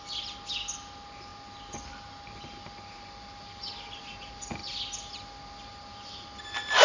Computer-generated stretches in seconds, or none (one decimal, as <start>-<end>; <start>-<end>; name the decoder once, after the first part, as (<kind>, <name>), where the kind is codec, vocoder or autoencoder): none

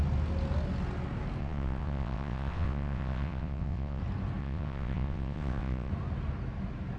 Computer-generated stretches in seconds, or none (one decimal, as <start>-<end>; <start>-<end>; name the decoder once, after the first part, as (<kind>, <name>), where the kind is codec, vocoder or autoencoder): 1.4-4.0 (vocoder, WaveNeXt); 4.4-5.9

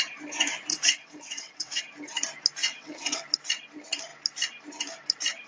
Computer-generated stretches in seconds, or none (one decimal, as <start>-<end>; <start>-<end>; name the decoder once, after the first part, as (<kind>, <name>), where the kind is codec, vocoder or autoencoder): 0.7-1.8 (vocoder, WaveNeXt); 2.6-3.2

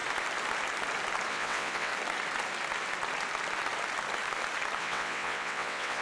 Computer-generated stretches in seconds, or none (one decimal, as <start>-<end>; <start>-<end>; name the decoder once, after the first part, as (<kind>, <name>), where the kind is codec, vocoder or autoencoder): 1.3-1.9 (vocoder, WaveNeXt); 4.8-6.0